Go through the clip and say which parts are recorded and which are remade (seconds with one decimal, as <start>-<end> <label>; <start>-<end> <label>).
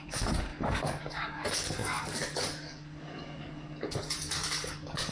0.0-5.1 remade